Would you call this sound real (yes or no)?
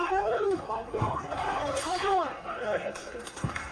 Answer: no